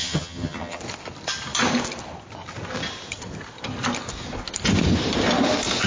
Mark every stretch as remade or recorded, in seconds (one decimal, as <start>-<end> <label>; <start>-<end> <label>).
0.0-0.8 remade; 0.8-5.9 recorded